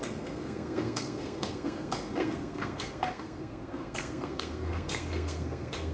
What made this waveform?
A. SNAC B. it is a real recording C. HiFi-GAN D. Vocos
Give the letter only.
A